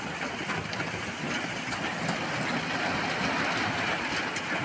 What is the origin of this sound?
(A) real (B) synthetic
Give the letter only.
A